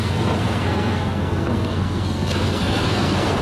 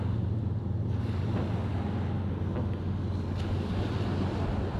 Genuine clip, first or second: second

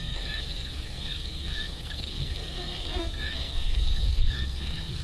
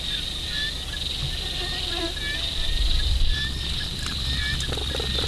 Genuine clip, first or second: second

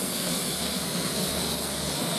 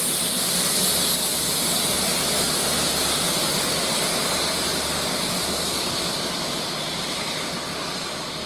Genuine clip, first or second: second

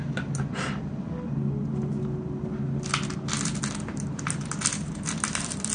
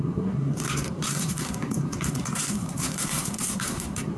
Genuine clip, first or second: first